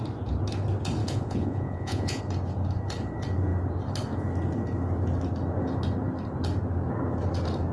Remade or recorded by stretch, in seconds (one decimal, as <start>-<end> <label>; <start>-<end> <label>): 0.0-1.0 recorded; 1.0-2.2 remade; 2.2-7.7 recorded

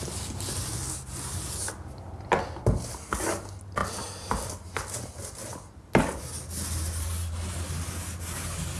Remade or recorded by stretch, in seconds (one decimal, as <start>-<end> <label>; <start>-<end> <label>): 0.0-8.8 recorded

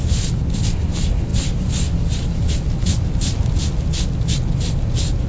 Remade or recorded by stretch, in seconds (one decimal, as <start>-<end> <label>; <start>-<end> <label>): 0.0-5.3 recorded

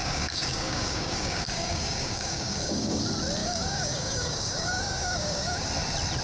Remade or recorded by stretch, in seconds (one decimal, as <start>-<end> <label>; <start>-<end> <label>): 0.0-3.0 remade; 3.0-3.4 recorded; 3.4-5.7 remade; 5.7-6.2 recorded

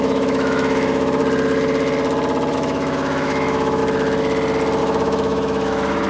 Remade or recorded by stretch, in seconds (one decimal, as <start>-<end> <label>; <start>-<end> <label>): 0.0-1.2 remade; 1.2-2.5 recorded; 2.5-3.8 remade; 3.8-4.8 recorded; 4.8-6.1 remade